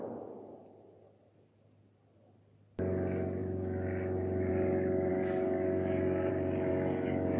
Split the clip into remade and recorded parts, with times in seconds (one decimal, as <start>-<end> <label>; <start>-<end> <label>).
0.0-5.1 recorded; 5.1-6.3 remade; 6.3-6.7 recorded; 6.7-7.4 remade